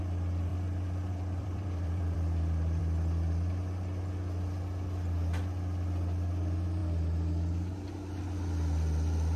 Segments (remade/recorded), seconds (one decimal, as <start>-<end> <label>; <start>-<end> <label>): 0.0-0.5 recorded; 0.5-2.8 remade; 2.8-9.4 recorded